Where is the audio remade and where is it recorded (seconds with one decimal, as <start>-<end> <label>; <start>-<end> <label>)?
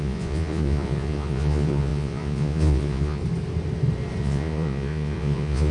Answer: 0.0-3.2 remade; 3.2-4.2 recorded; 4.2-5.7 remade